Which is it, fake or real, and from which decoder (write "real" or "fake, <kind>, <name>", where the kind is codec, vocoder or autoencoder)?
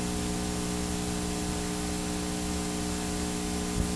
real